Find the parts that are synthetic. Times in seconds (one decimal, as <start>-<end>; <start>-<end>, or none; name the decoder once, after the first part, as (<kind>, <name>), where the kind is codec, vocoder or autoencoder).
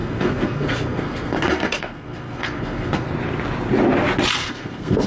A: 0.0-3.1 (codec, SNAC); 4.4-5.1